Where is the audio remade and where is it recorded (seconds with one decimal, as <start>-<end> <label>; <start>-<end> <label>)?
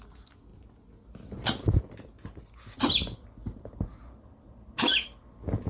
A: 0.0-3.4 recorded; 3.4-4.7 remade; 4.7-5.7 recorded